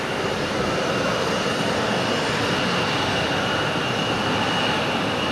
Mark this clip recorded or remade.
recorded